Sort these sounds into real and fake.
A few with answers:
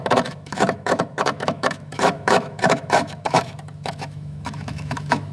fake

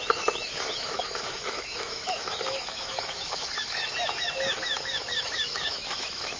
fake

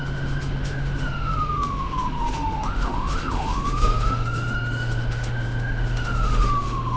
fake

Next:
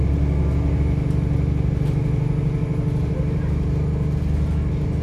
real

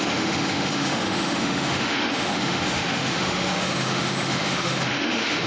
fake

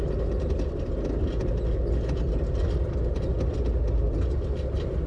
real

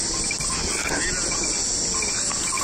real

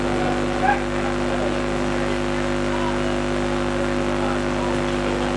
real